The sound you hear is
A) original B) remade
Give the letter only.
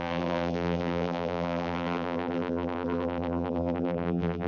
B